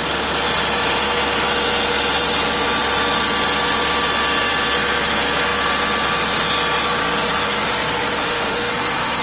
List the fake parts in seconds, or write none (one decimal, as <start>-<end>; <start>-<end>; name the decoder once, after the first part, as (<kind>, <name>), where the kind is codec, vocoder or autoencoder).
8.2-8.7 (autoencoder, DAC-VAE)